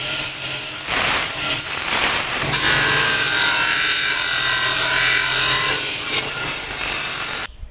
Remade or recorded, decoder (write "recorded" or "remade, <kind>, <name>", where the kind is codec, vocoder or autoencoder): remade, vocoder, BigVGAN v2